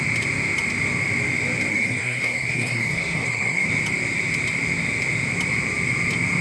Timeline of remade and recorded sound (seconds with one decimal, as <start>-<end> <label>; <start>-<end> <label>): 0.0-1.7 recorded; 1.7-3.7 remade; 3.7-6.4 recorded

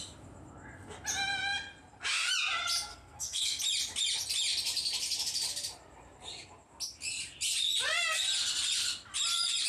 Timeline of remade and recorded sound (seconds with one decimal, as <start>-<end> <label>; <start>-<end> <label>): 0.0-2.9 recorded; 2.9-3.6 remade; 3.6-9.7 recorded

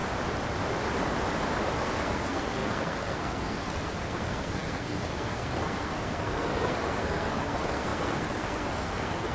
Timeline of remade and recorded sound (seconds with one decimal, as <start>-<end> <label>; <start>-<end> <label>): 0.0-1.7 recorded; 1.7-9.3 remade

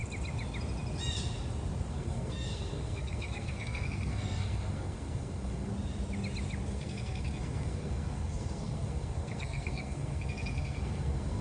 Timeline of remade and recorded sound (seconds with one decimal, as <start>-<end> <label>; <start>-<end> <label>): 0.0-1.9 recorded; 1.9-5.7 remade; 5.7-6.7 recorded; 6.7-11.4 remade

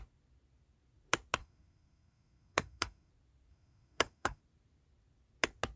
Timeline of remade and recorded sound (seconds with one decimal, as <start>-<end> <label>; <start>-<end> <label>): 0.0-1.4 recorded; 1.4-3.1 remade; 3.1-3.5 recorded; 3.5-4.4 remade; 4.4-5.8 recorded

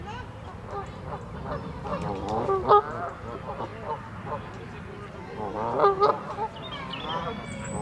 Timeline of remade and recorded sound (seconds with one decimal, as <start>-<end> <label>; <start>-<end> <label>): 0.0-7.8 recorded

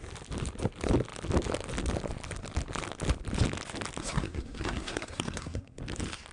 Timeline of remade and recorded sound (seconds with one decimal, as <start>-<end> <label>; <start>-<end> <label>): 0.0-4.0 recorded; 4.0-5.8 remade; 5.8-6.3 recorded

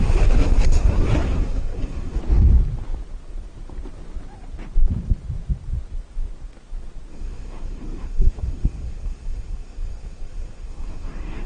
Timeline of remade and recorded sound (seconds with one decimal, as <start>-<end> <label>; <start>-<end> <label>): 0.0-2.2 remade; 2.2-7.1 recorded; 7.1-11.5 remade